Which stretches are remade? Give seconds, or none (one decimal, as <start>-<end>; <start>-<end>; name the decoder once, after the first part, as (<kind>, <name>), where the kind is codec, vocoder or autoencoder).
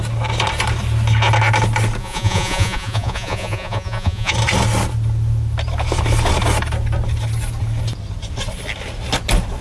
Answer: 2.0-4.3 (vocoder, Vocos)